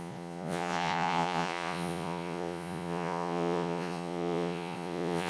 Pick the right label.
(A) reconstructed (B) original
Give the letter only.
A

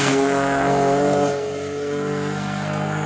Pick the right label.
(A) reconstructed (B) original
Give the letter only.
A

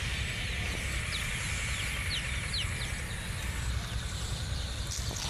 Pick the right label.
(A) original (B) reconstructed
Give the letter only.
A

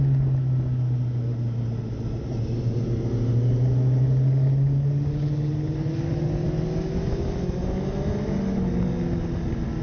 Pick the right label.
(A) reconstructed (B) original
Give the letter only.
B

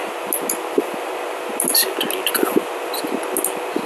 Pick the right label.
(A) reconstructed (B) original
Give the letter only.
B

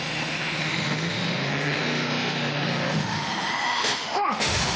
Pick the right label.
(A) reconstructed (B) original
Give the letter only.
A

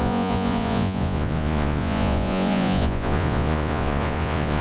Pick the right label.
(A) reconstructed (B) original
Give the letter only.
A